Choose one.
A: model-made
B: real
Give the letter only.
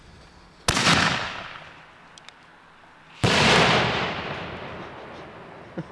B